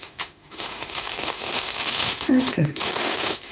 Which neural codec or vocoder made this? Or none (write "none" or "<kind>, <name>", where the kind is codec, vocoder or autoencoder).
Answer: autoencoder, DAC-VAE